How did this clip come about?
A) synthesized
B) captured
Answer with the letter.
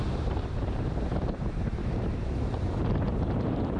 A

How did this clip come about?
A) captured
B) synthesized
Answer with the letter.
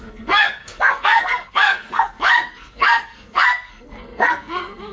B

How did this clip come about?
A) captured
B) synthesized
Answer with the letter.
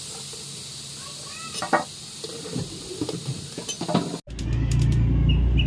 A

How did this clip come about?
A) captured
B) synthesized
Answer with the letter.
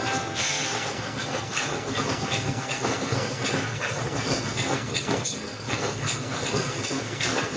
B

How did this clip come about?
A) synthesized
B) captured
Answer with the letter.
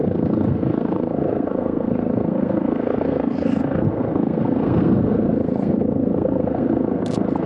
A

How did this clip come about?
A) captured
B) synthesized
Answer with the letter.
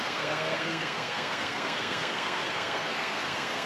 B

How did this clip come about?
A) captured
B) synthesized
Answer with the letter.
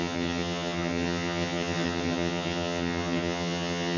B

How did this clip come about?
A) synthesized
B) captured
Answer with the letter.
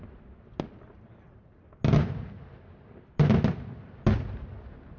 B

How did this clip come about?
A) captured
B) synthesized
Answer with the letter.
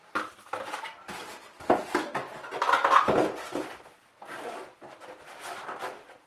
A